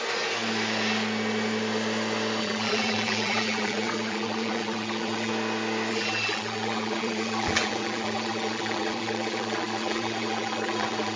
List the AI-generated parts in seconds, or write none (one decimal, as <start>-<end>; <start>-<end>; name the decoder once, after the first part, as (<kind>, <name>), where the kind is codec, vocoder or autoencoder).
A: 2.4-5.3 (vocoder, BigVGAN v2); 5.9-11.2